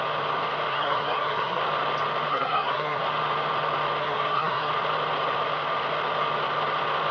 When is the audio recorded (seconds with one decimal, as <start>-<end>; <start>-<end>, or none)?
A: 0.0-0.7; 1.6-2.3; 3.0-4.0; 4.7-7.1